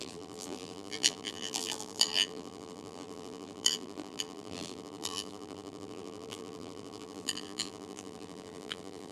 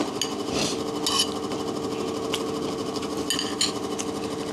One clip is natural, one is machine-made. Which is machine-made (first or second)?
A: first